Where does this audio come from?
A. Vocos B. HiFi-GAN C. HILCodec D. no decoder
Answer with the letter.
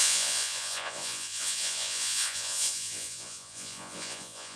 A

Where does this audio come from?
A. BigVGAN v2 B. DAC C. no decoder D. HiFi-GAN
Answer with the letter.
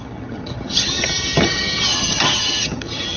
D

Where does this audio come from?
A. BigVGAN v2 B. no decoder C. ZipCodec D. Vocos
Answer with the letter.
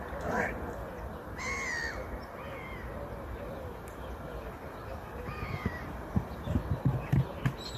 B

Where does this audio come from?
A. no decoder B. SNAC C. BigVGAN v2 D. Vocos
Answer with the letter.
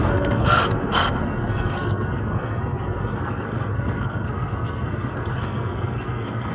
B